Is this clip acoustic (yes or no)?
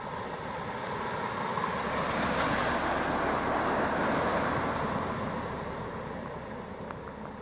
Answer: yes